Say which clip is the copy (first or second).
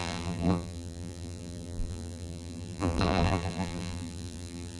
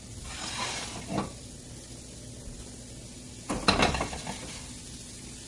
first